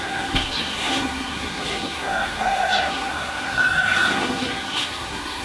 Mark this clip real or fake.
fake